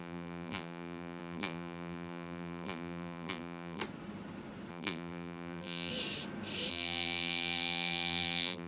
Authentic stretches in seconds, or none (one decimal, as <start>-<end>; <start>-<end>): 3.8-4.7; 5.9-6.7